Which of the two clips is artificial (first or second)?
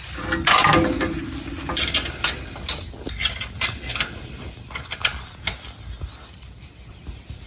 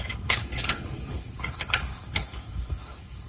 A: second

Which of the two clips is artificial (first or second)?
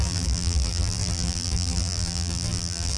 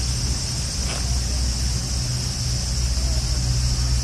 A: first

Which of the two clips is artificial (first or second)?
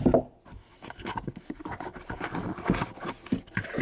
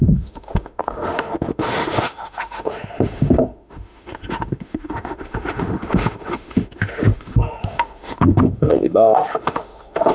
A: second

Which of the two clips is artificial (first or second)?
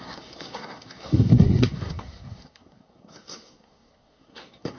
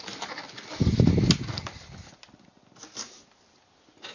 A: first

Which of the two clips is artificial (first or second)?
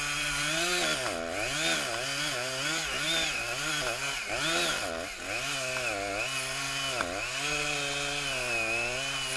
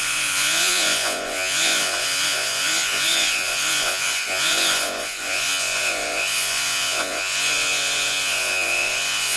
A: second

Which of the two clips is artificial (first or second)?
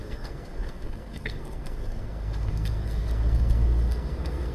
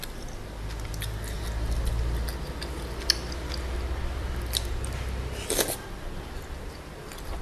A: first